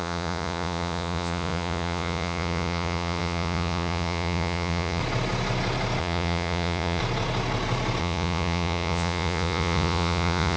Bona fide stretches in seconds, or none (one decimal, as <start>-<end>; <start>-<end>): 5.0-6.0; 7.0-8.0